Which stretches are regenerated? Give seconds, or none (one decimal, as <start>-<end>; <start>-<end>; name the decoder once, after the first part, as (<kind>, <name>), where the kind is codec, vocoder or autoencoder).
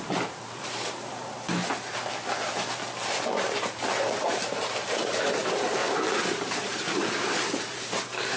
0.0-1.6 (vocoder, BigVGAN v2); 4.2-5.8; 6.3-8.4